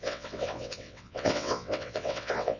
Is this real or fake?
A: fake